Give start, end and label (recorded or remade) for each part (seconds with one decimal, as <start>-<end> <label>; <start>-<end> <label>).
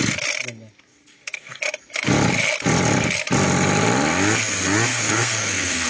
0.0-0.9 recorded; 0.9-1.6 remade; 1.6-4.9 recorded; 4.9-5.9 remade